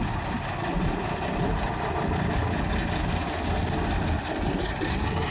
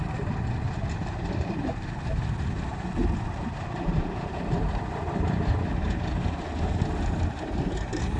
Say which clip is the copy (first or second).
second